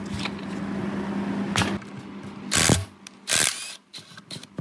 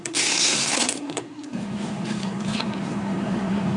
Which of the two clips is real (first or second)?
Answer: first